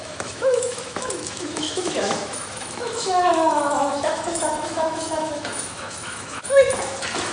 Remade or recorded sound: remade